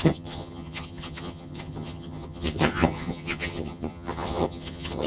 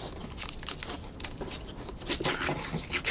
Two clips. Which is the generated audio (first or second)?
first